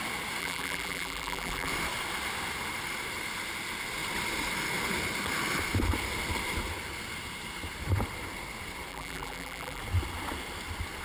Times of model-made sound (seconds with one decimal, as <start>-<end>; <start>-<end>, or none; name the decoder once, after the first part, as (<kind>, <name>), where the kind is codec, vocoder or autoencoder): 0.4-1.7 (vocoder, BigVGAN v2); 8.9-9.8